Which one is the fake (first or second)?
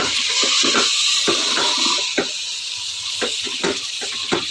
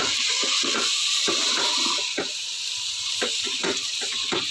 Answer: second